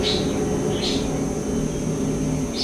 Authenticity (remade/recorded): recorded